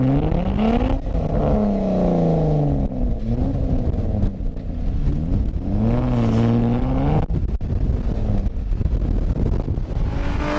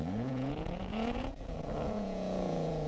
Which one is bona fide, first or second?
first